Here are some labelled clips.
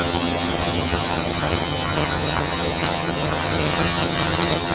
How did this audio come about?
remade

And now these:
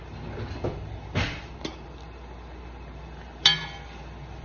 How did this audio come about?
recorded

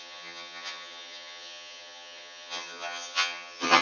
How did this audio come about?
remade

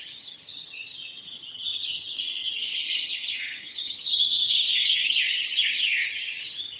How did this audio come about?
remade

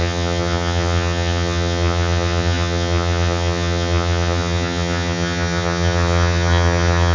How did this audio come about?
remade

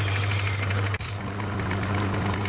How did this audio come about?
recorded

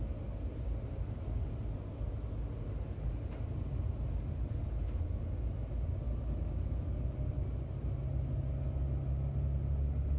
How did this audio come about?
recorded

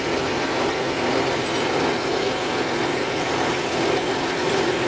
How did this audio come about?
recorded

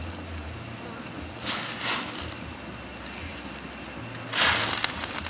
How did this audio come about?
recorded